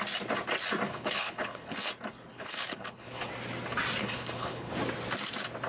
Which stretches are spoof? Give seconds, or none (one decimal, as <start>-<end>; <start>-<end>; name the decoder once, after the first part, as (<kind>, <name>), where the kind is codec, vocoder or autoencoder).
0.9-1.9 (codec, HILCodec); 2.3-3.3; 4.0-4.7